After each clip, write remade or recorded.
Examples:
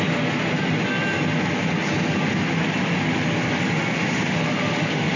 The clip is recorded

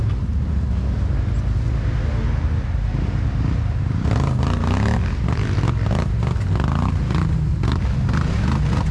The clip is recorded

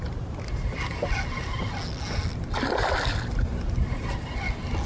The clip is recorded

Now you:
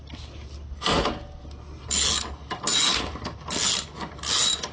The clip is recorded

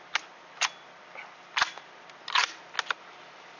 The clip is recorded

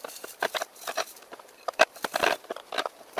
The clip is remade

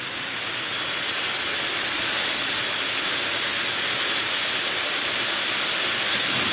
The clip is recorded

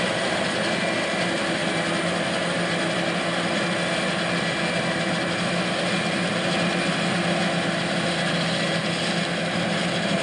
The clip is recorded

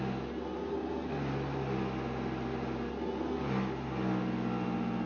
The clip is recorded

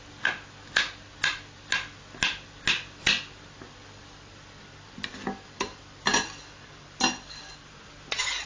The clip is recorded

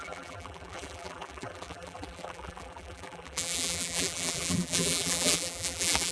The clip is remade